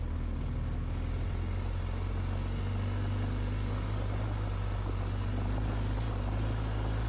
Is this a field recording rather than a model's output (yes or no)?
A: yes